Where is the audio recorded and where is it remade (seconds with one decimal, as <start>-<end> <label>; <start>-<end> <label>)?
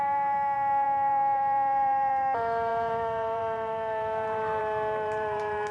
0.0-5.7 remade